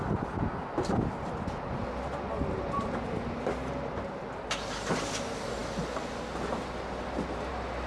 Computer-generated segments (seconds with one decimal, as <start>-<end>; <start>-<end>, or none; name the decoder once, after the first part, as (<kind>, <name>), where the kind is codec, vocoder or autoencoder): none